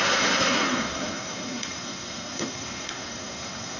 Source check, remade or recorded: remade